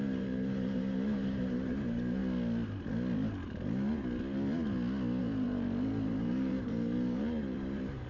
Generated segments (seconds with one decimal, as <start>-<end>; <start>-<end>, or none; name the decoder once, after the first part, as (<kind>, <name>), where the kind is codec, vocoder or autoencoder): 0.0-2.2 (vocoder, BigVGAN v2); 5.2-8.1